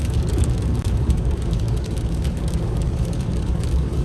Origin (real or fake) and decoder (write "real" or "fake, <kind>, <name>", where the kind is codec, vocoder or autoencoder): fake, codec, DAC